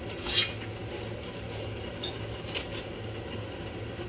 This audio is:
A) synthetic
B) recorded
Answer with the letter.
B